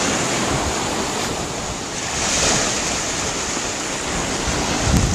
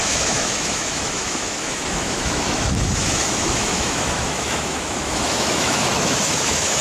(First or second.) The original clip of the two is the first